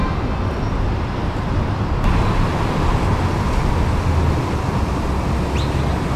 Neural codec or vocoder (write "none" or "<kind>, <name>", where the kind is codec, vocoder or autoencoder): none